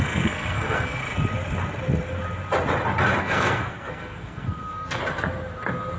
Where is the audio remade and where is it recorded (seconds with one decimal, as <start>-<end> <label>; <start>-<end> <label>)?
0.0-1.0 remade; 1.0-3.2 recorded; 3.2-5.0 remade; 5.0-6.0 recorded